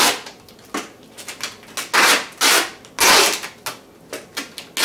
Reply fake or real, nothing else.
real